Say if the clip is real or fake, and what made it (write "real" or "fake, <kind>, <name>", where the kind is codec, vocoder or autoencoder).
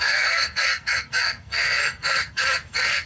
fake, codec, SNAC